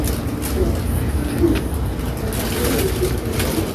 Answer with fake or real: real